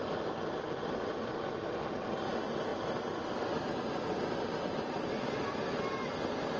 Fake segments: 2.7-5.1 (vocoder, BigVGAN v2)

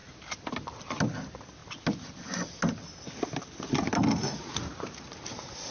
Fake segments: none

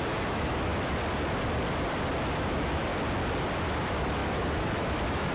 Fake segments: 0.0-0.7 (autoencoder, DAC-VAE); 2.3-2.9; 3.6-5.3

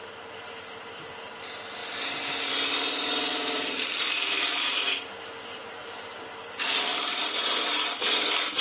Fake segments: 0.0-1.1 (vocoder, BigVGAN v2); 3.3-7.2